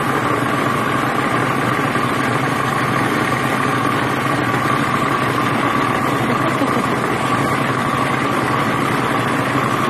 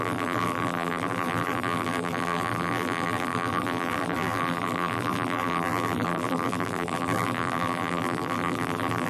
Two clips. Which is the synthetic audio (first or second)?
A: second